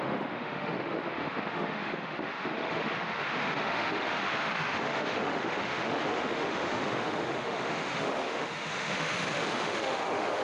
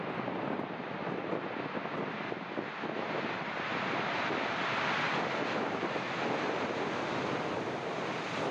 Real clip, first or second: second